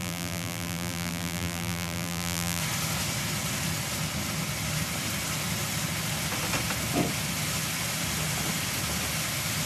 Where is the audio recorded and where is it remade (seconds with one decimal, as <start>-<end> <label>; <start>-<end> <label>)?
0.0-2.6 remade; 2.6-9.7 recorded